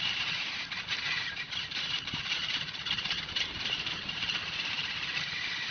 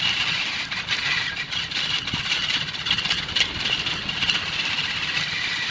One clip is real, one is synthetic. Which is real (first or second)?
second